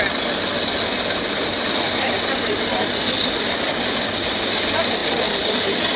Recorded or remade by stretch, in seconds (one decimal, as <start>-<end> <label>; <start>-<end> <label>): 0.0-6.0 recorded